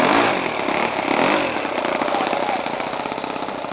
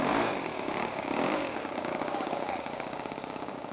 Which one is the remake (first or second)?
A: second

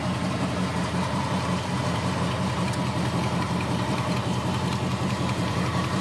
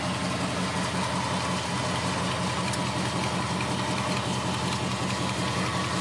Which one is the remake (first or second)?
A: first